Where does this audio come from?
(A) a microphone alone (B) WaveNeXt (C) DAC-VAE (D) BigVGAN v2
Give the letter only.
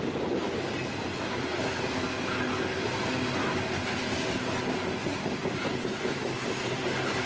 A